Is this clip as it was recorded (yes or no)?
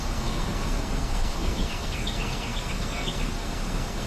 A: no